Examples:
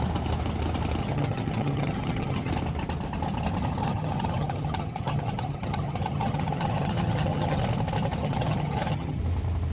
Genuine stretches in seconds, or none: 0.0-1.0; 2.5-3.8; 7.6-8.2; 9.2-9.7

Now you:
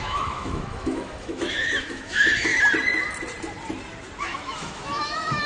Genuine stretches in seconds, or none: 2.5-4.2

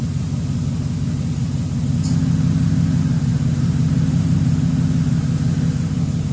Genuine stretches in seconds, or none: 0.0-3.3; 4.7-6.3

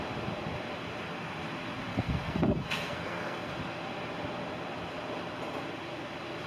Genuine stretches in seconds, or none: 0.0-1.9; 3.5-6.5

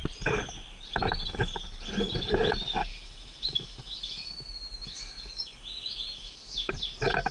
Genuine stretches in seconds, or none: 0.0-2.9; 6.7-7.3

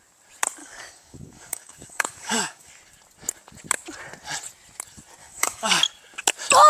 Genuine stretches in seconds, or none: 0.0-0.6; 2.7-5.2; 5.7-6.7

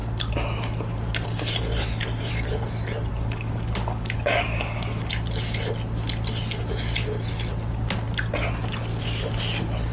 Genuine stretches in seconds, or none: 0.0-3.1; 5.1-8.9; 9.4-9.9